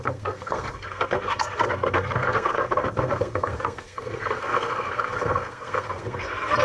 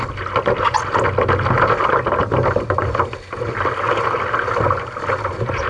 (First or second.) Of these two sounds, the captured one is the second